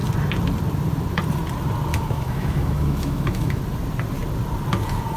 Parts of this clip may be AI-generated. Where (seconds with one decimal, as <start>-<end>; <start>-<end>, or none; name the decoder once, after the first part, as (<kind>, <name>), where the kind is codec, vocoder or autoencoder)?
1.9-3.6 (autoencoder, DAC-VAE)